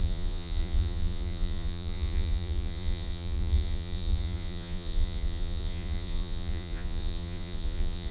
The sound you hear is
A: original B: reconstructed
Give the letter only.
B